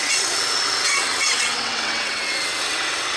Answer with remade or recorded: remade